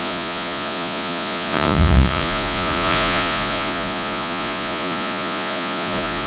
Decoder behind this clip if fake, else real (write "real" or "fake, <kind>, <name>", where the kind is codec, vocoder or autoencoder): fake, vocoder, Vocos